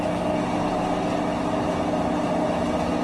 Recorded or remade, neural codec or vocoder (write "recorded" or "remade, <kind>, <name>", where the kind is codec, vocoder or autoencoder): recorded